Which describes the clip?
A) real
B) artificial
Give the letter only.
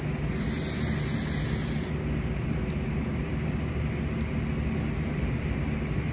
A